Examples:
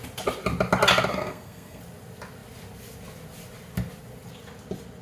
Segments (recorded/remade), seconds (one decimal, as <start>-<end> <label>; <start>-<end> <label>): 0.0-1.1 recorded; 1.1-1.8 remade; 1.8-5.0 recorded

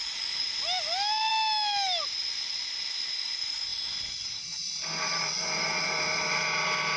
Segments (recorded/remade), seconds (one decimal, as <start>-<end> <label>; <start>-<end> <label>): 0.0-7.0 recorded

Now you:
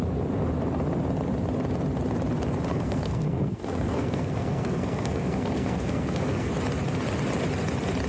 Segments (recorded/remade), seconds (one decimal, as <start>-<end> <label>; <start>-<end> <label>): 0.0-2.7 recorded; 2.7-6.5 remade; 6.5-8.1 recorded

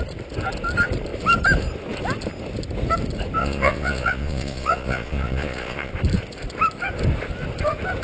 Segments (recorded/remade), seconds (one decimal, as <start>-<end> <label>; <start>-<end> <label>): 0.0-3.4 recorded; 3.4-5.9 remade; 5.9-8.0 recorded

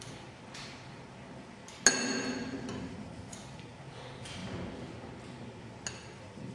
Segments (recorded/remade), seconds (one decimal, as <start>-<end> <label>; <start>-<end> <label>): 0.0-1.6 remade; 1.6-2.9 recorded; 2.9-4.4 remade; 4.4-5.9 recorded; 5.9-6.5 remade

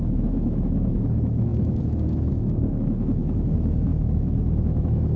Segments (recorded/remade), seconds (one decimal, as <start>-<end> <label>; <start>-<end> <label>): 0.0-5.2 remade

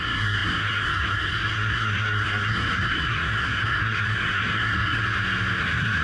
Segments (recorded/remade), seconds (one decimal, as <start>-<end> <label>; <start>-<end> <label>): 0.0-5.0 remade; 5.0-5.6 recorded; 5.6-6.0 remade

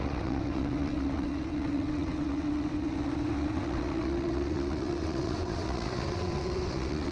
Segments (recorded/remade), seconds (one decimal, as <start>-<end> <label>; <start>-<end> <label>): 0.0-7.1 remade